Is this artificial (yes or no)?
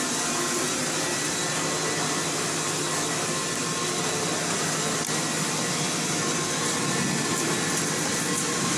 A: no